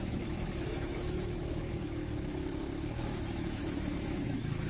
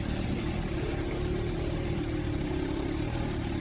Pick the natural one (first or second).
second